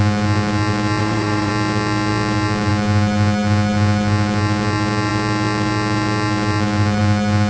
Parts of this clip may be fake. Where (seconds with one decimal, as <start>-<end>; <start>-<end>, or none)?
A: 1.0-1.5